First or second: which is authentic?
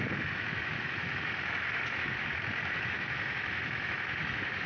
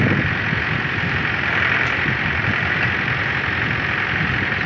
second